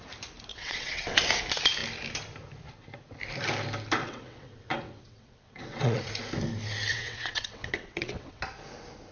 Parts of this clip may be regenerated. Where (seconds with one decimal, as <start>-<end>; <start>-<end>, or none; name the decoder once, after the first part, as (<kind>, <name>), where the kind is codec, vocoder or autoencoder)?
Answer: 0.5-1.2 (vocoder, WaveNeXt); 4.0-6.1; 6.9-8.4